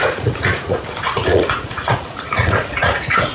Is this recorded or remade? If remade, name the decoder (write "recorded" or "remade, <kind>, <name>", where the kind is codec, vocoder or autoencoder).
remade, vocoder, Vocos